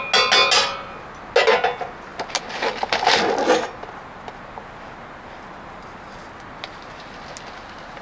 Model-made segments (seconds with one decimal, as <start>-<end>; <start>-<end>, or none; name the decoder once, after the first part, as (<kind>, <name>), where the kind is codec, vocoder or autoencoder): none